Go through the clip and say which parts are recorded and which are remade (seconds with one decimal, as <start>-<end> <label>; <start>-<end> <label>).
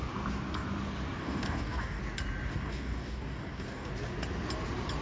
0.0-1.2 recorded; 1.2-2.0 remade; 2.0-2.5 recorded; 2.5-3.9 remade; 3.9-5.0 recorded